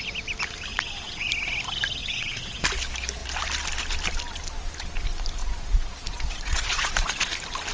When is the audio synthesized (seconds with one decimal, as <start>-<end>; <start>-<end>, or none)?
0.7-1.3; 2.0-2.6; 5.4-7.3